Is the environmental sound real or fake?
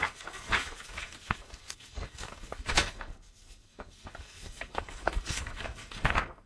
fake